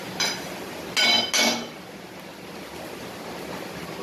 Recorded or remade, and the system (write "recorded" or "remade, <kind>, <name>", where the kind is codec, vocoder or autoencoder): recorded